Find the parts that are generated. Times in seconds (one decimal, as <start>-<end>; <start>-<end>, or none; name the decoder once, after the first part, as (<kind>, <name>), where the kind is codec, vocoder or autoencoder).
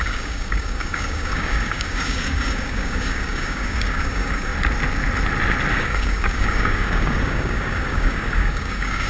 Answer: 0.0-4.5 (codec, DAC); 5.7-9.1